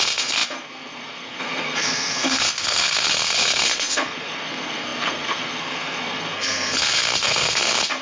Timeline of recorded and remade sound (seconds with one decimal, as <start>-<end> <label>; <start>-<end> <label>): 0.0-8.0 remade